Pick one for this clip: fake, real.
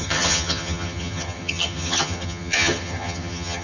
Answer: fake